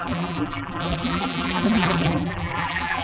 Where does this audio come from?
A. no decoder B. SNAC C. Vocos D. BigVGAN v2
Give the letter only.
D